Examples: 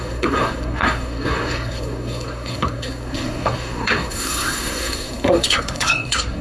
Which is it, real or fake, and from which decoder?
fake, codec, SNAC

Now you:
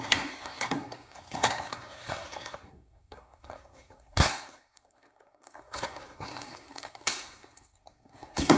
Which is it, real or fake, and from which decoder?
fake, codec, SNAC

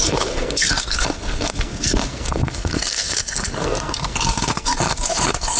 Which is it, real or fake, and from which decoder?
fake, codec, SNAC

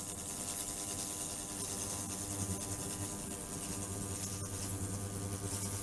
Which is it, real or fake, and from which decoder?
real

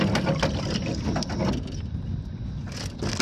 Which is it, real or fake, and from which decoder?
real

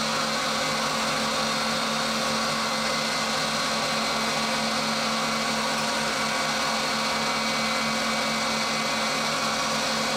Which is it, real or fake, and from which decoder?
real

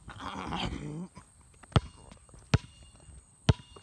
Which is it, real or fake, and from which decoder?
real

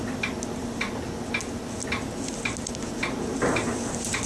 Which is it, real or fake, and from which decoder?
real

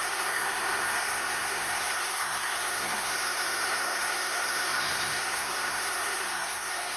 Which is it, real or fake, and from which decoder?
fake, codec, SNAC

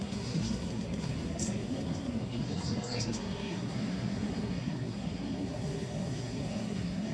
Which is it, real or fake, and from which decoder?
fake, codec, SNAC